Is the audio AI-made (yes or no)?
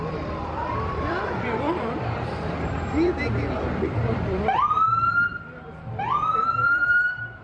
yes